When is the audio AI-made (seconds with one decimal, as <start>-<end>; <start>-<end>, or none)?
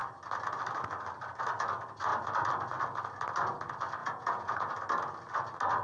4.0-4.7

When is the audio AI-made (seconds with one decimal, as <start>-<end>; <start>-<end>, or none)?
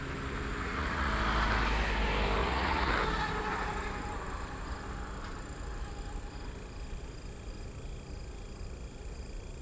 0.6-1.1; 2.4-2.9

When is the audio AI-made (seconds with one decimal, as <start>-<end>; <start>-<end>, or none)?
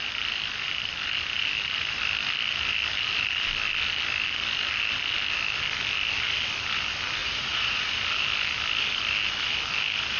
7.2-7.9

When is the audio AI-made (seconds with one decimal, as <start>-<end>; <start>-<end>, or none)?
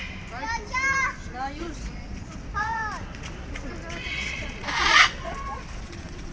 1.6-2.8; 4.1-6.3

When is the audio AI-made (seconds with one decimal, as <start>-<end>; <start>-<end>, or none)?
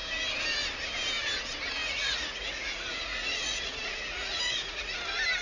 1.8-5.0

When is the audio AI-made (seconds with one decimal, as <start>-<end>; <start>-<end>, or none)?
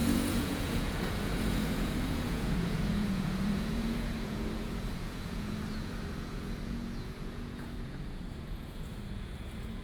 0.0-9.8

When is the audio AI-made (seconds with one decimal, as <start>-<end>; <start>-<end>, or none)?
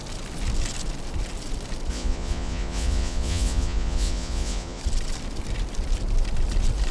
1.9-4.8